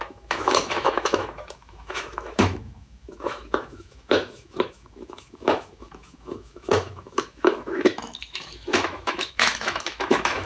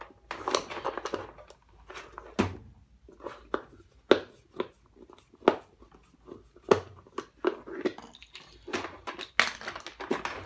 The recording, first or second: second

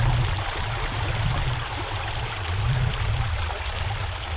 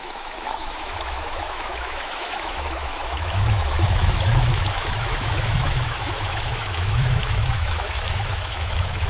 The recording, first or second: first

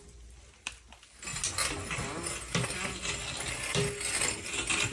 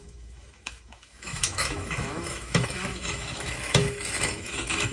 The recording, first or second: first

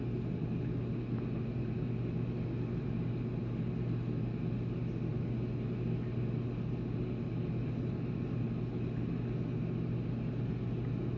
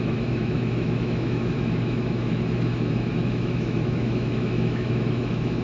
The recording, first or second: first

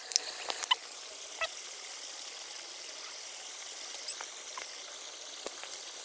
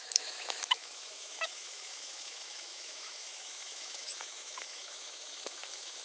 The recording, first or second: first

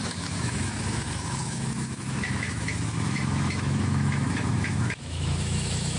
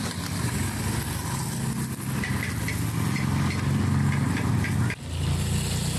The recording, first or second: second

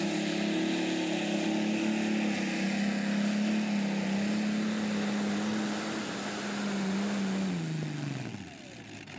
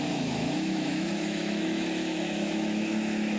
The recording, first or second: first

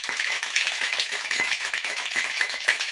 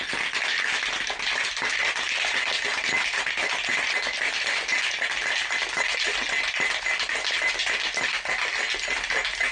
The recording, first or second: second